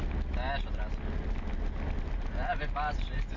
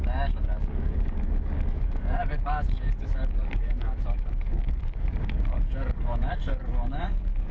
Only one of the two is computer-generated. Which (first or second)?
second